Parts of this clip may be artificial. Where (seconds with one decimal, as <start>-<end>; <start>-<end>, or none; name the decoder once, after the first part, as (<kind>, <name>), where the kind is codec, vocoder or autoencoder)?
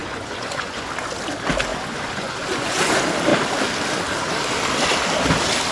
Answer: 0.0-0.9 (vocoder, Vocos); 1.7-2.9